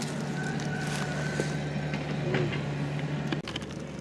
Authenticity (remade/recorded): recorded